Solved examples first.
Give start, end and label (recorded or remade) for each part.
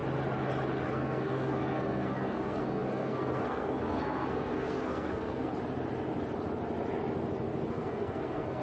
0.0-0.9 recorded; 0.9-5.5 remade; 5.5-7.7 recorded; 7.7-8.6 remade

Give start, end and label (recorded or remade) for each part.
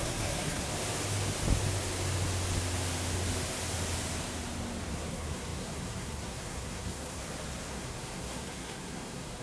0.0-0.7 remade; 0.7-4.9 recorded; 4.9-7.2 remade; 7.2-7.7 recorded; 7.7-9.4 remade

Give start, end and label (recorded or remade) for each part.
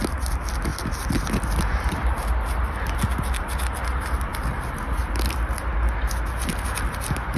0.0-7.4 recorded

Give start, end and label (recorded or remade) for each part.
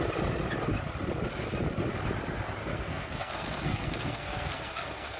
0.0-2.6 recorded; 2.6-5.2 remade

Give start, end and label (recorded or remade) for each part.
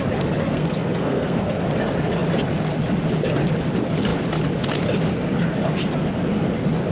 0.0-0.5 recorded; 0.5-1.7 remade; 1.7-6.9 recorded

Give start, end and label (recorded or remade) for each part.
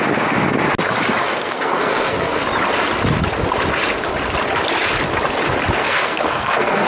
0.0-1.2 recorded; 1.2-2.4 remade; 2.4-5.8 recorded; 5.8-6.9 remade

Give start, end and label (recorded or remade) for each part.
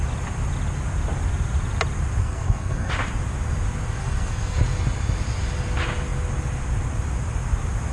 0.0-2.2 recorded; 2.2-2.9 remade; 2.9-4.0 recorded; 4.0-4.6 remade; 4.6-7.9 recorded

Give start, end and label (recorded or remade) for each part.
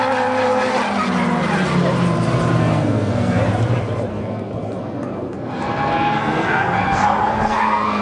0.0-2.6 recorded; 2.6-3.4 remade; 3.4-4.1 recorded; 4.1-8.0 remade